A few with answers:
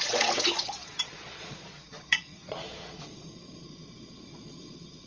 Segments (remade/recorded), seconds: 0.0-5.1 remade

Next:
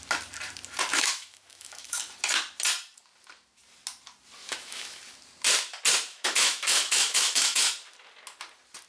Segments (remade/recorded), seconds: 0.0-0.9 recorded; 0.9-2.0 remade; 2.0-4.4 recorded; 4.4-5.0 remade; 5.0-6.1 recorded; 6.1-7.7 remade; 7.7-8.9 recorded

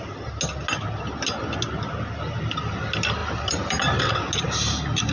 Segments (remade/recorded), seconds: 0.0-3.2 recorded; 3.2-4.1 remade; 4.1-5.1 recorded

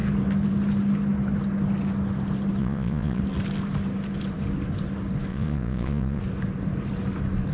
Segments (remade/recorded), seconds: 0.0-2.6 recorded; 2.6-3.2 remade; 3.2-5.3 recorded; 5.3-6.2 remade; 6.2-7.5 recorded

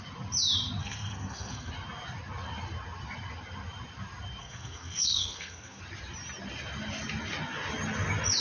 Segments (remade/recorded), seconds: 0.0-0.8 recorded; 0.8-1.7 remade; 1.7-4.4 recorded; 4.4-5.8 remade; 5.8-8.4 recorded

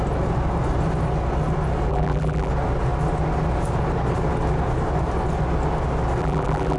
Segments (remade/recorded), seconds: 0.0-1.9 recorded; 1.9-2.5 remade; 2.5-6.2 recorded; 6.2-6.8 remade

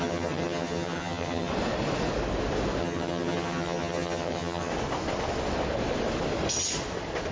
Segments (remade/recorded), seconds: 0.0-1.5 remade; 1.5-2.8 recorded; 2.8-4.7 remade; 4.7-7.3 recorded

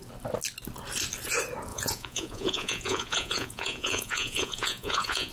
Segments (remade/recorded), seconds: 0.0-1.7 recorded; 1.7-5.3 remade